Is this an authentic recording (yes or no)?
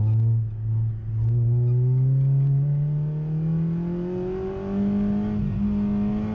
yes